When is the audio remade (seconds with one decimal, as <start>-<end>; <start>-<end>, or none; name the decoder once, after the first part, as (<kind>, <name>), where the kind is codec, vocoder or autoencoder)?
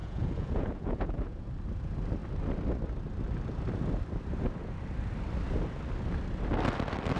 0.0-1.5 (vocoder, Vocos)